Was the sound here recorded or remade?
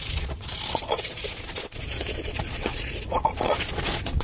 remade